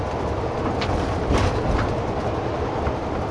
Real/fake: fake